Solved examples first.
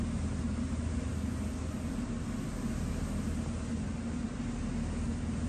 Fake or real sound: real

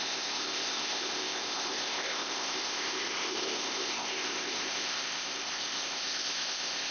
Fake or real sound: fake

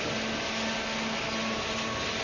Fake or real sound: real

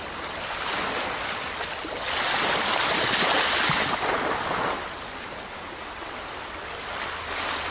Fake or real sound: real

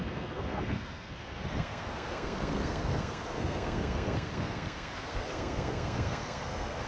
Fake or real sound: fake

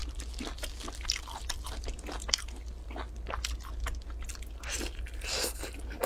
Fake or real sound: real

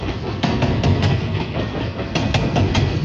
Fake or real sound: fake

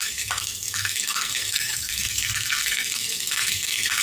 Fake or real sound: fake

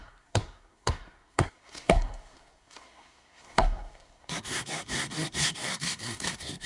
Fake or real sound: fake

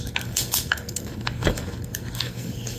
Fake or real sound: fake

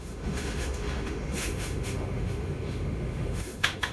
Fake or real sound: fake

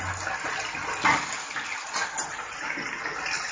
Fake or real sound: real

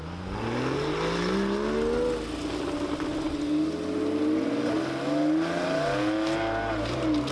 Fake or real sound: real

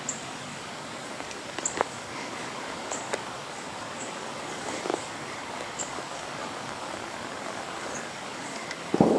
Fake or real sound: fake